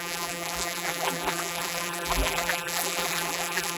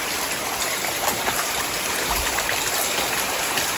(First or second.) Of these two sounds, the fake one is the first